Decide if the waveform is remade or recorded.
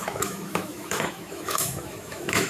remade